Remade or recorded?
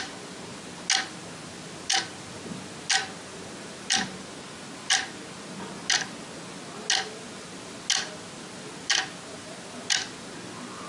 recorded